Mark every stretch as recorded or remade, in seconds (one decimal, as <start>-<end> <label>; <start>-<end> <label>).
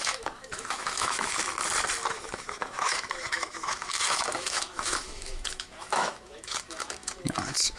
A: 0.0-1.5 remade; 1.5-2.1 recorded; 2.1-7.8 remade